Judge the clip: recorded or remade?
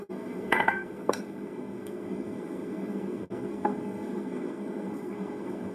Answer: remade